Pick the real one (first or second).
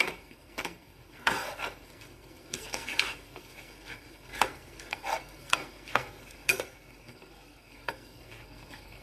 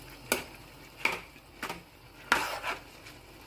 second